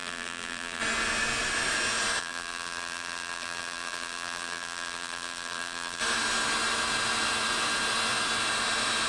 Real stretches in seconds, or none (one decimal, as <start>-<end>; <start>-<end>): 0.8-2.2; 6.0-9.1